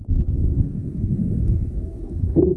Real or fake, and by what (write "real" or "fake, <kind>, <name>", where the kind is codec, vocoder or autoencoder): fake, codec, SNAC